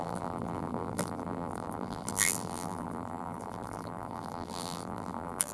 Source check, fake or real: fake